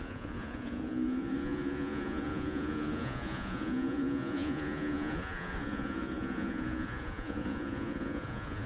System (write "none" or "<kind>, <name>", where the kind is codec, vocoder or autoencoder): vocoder, Vocos